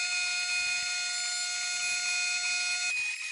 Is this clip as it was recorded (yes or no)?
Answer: yes